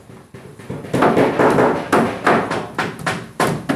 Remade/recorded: recorded